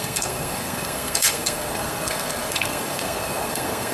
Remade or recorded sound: remade